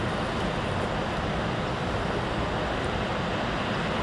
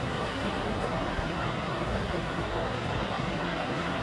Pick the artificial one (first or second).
second